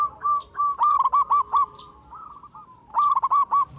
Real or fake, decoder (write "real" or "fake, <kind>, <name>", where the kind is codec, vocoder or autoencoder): real